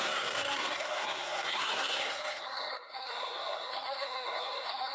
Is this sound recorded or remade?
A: remade